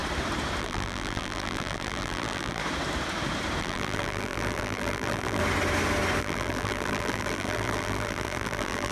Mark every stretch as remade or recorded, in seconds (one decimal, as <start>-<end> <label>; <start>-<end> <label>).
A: 0.0-0.6 recorded; 0.6-2.6 remade; 2.6-3.6 recorded; 3.6-5.4 remade; 5.4-6.2 recorded; 6.2-8.9 remade

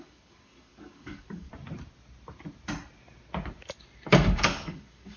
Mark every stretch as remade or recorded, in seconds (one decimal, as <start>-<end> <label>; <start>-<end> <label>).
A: 0.0-1.5 remade; 1.5-4.1 recorded; 4.1-5.2 remade